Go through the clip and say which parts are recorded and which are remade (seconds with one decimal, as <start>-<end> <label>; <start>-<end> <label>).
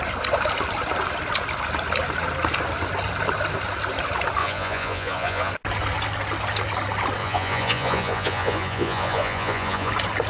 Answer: 0.0-4.4 recorded; 4.4-5.5 remade; 5.5-7.2 recorded; 7.2-9.9 remade; 9.9-10.3 recorded